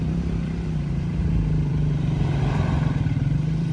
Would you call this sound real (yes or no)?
no